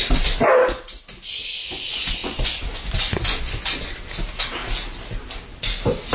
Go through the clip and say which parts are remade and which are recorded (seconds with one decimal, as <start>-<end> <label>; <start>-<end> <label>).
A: 0.0-1.6 recorded; 1.6-3.9 remade; 3.9-6.1 recorded